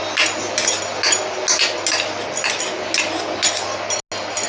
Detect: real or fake real